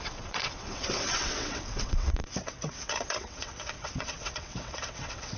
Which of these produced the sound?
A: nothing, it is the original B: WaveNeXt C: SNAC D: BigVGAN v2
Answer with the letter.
B